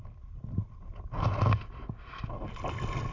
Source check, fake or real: real